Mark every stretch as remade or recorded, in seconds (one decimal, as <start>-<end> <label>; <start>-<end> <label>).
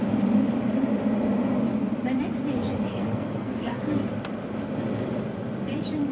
0.0-2.9 recorded; 2.9-3.8 remade; 3.8-6.1 recorded